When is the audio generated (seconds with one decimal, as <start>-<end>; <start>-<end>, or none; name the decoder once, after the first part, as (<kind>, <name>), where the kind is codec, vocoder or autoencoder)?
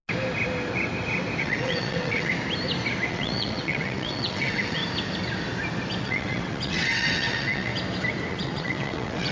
1.4-2.3 (vocoder, WaveNeXt); 3.1-4.8; 6.0-7.7; 8.3-9.3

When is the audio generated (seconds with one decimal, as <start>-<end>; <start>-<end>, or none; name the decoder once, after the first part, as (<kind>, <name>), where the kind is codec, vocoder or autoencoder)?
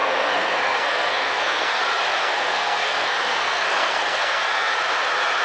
0.0-1.8 (codec, SNAC); 2.2-4.8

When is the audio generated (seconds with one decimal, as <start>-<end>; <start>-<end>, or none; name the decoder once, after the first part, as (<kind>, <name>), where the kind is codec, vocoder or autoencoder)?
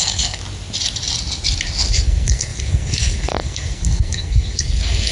0.0-0.4 (codec, SNAC); 1.9-5.1